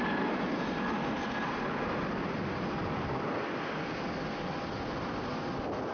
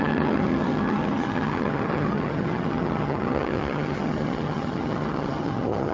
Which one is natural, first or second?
first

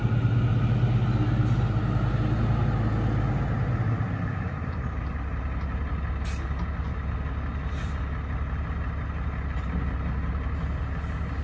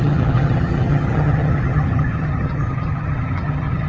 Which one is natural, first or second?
first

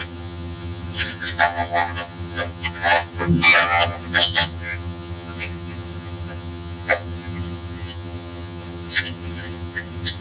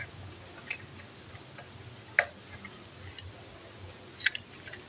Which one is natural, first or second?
second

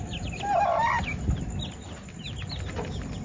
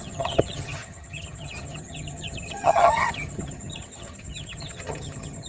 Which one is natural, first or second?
first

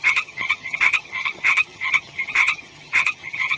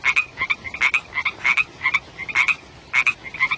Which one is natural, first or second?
second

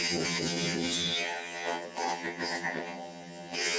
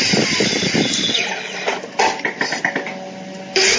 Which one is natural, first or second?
second